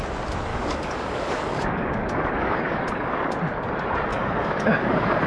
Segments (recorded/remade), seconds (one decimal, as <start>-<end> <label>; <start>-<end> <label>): 0.0-0.5 recorded; 0.5-3.2 remade; 3.2-4.1 recorded; 4.1-5.3 remade